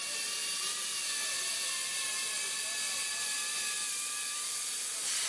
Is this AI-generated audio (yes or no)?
no